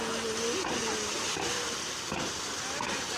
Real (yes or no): yes